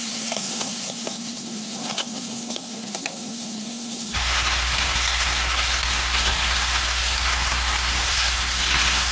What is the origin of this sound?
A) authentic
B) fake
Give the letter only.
B